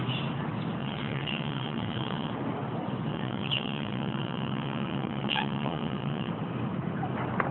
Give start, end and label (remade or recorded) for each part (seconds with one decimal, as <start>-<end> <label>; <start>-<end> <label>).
0.0-0.8 recorded; 0.8-2.3 remade; 2.3-3.1 recorded; 3.1-6.3 remade; 6.3-7.5 recorded